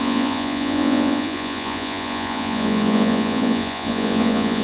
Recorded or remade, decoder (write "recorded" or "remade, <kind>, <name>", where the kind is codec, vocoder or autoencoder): remade, vocoder, Vocos